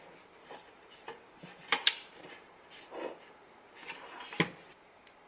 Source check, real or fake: fake